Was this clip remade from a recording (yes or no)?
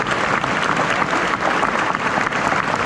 no